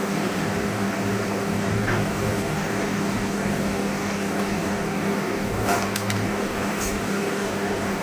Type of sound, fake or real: fake